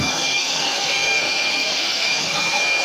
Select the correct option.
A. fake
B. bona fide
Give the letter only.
A